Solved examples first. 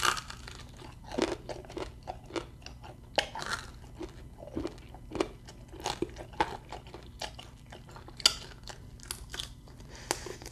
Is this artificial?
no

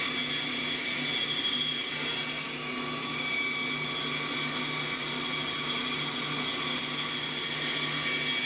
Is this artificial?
no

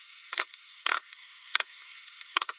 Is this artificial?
yes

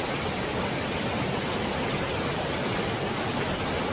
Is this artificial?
no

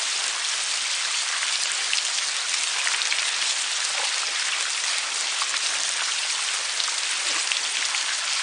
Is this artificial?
no